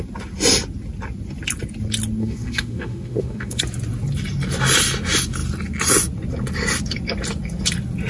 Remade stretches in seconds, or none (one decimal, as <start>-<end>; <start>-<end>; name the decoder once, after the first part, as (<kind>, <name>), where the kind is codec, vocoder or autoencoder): 2.2-3.6 (autoencoder, DAC-VAE)